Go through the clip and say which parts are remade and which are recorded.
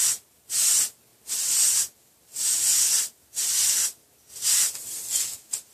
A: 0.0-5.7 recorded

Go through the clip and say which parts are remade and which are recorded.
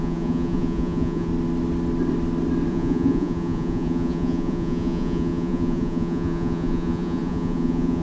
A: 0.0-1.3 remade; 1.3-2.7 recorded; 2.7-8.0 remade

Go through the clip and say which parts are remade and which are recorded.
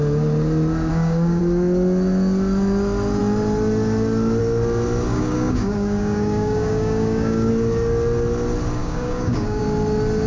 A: 0.0-0.9 recorded; 0.9-1.4 remade; 1.4-5.1 recorded; 5.1-7.5 remade; 7.5-8.8 recorded; 8.8-9.6 remade; 9.6-10.3 recorded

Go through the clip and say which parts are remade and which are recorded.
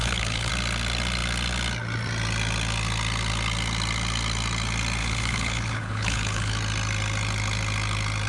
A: 0.0-0.5 remade; 0.5-5.0 recorded; 5.0-6.5 remade; 6.5-8.3 recorded